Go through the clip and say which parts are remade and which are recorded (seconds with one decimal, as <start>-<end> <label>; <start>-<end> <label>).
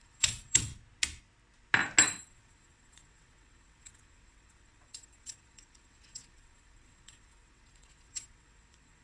0.0-0.7 remade; 0.7-2.0 recorded; 2.0-9.0 remade